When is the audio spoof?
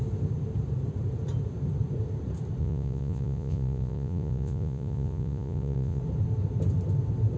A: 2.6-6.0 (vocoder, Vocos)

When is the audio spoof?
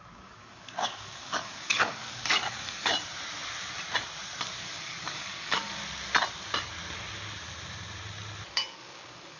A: 0.0-2.9 (codec, DAC); 4.6-5.8; 8.5-9.4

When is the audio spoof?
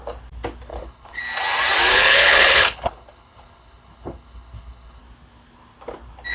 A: 0.7-1.2 (codec, HILCodec); 1.9-5.0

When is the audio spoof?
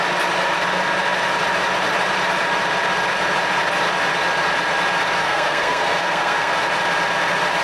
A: 5.2-6.5 (codec, SNAC)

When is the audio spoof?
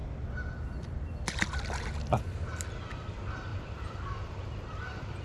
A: 3.5-5.2 (vocoder, BigVGAN v2)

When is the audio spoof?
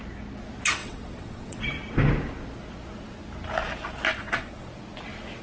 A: 0.8-1.6 (vocoder, WaveNeXt); 4.1-4.7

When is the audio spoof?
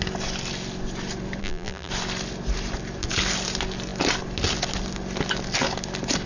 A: 1.4-1.9 (vocoder, BigVGAN v2)